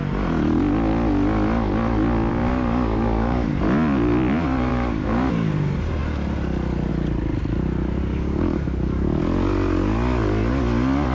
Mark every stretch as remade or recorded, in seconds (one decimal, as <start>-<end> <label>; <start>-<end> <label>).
0.0-2.3 recorded; 2.3-3.5 remade; 3.5-4.7 recorded; 4.7-5.3 remade; 5.3-8.1 recorded; 8.1-9.2 remade; 9.2-11.1 recorded